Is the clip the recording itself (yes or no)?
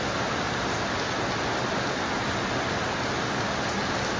yes